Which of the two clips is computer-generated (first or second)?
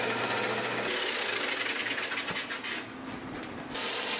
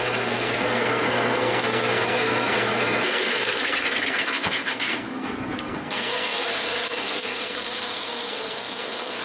second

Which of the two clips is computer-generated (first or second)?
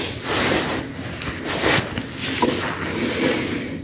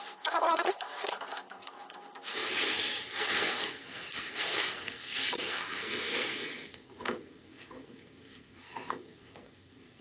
second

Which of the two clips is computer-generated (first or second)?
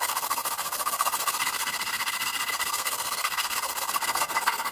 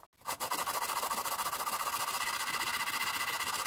first